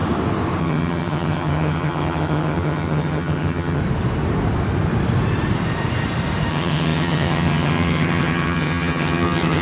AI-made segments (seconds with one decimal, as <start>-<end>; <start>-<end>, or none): 0.6-3.8; 6.5-9.6